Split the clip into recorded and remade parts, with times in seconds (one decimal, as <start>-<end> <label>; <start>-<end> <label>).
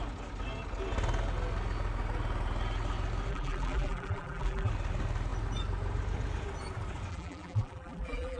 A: 0.0-3.3 recorded; 3.3-4.7 remade; 4.7-7.1 recorded; 7.1-8.4 remade